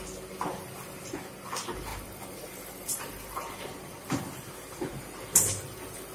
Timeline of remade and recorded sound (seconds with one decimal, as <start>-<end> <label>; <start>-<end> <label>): 0.0-6.1 recorded